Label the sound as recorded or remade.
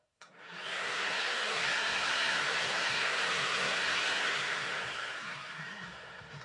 remade